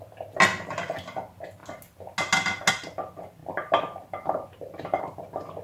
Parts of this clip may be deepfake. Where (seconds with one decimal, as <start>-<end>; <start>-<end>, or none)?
none